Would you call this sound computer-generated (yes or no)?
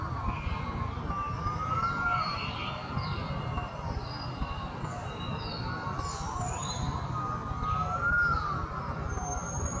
no